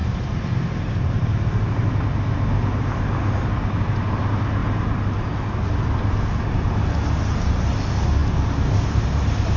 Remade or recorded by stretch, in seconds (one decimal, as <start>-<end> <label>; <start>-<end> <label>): 0.0-1.2 remade; 1.2-9.6 recorded